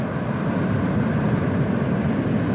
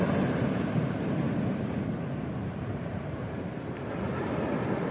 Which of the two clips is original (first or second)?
first